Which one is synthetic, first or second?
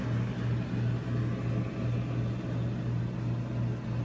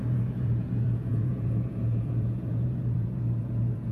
second